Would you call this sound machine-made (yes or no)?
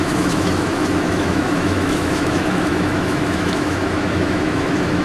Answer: yes